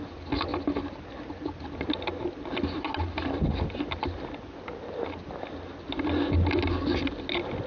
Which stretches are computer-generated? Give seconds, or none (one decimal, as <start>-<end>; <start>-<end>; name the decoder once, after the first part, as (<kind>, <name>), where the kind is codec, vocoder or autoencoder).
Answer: none